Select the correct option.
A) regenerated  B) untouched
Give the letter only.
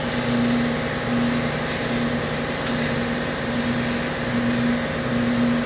B